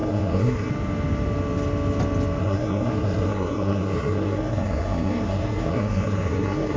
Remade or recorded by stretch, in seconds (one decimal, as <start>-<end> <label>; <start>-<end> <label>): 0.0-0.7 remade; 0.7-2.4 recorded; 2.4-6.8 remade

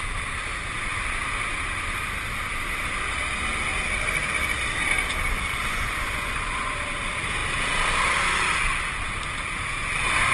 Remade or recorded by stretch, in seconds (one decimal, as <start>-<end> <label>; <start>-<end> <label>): 0.0-5.6 recorded; 5.6-6.8 remade; 6.8-10.3 recorded

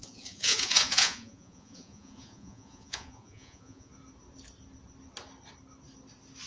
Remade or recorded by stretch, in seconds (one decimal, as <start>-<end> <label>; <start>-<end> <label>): 0.0-3.9 remade; 3.9-6.5 recorded

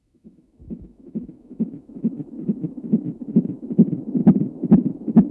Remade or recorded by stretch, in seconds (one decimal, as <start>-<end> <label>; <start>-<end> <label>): 0.0-5.3 remade

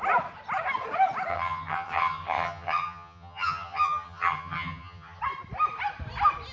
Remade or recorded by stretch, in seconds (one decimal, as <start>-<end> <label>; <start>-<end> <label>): 0.0-1.3 recorded; 1.3-5.2 remade; 5.2-6.5 recorded

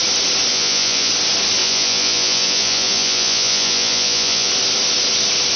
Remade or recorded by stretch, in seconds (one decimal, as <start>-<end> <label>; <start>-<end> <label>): 0.0-0.5 recorded; 0.5-1.1 remade; 1.1-1.6 recorded; 1.6-4.5 remade; 4.5-5.6 recorded

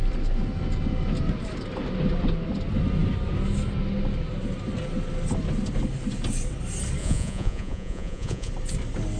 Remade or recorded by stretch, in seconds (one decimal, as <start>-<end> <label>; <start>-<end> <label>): 0.0-7.0 recorded; 7.0-8.5 remade; 8.5-9.2 recorded